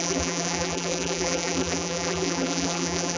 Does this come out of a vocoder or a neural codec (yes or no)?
yes